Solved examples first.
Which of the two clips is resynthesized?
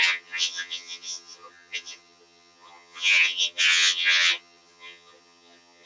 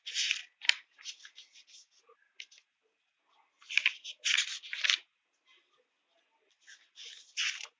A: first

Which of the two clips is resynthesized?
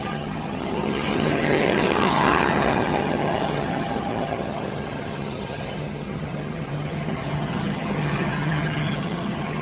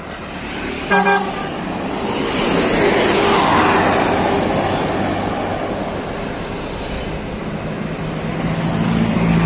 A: first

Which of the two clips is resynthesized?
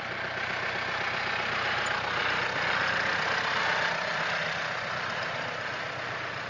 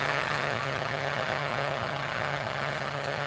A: second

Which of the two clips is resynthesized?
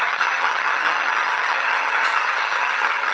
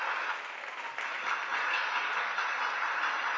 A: first